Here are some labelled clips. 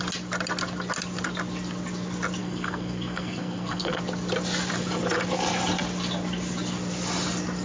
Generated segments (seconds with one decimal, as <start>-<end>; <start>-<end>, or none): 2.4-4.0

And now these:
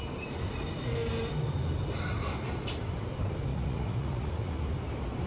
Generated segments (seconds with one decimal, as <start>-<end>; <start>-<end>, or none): 3.5-4.6

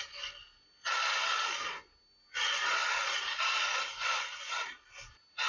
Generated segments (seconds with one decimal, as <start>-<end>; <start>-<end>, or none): 3.0-4.7

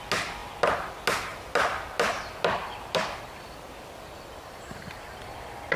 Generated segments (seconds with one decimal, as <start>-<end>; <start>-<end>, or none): none

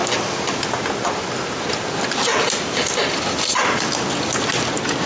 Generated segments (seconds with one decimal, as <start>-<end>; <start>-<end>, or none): none

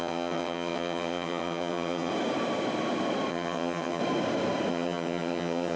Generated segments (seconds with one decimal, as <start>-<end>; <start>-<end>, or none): 0.0-2.1; 3.3-4.0; 4.7-5.8

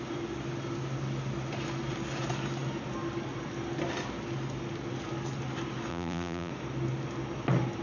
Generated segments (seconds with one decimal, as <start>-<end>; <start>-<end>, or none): 5.9-6.5

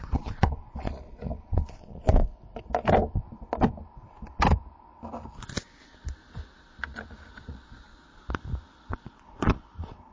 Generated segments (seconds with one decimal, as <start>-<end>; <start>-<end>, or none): 0.0-2.2; 7.3-7.9; 8.8-10.1